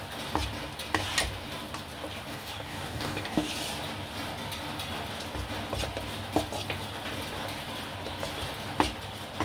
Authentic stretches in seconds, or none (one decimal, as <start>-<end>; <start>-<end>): 0.0-2.3; 3.5-9.4